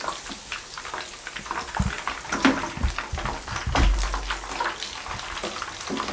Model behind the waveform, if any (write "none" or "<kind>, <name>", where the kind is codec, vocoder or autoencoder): none